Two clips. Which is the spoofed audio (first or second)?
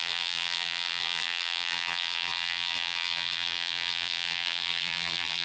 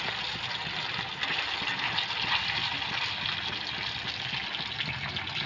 first